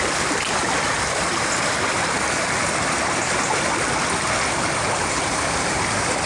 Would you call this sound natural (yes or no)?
yes